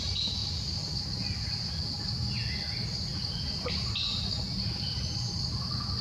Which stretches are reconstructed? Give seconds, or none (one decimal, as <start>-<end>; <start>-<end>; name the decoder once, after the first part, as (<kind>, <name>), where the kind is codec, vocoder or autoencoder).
none